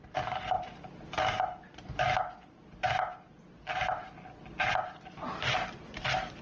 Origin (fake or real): real